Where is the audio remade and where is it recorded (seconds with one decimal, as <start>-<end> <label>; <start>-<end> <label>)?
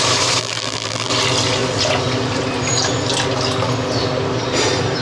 0.0-0.4 recorded; 0.4-1.1 remade; 1.1-5.0 recorded